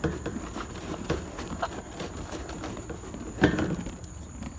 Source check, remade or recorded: recorded